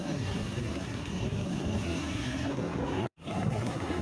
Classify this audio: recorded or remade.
remade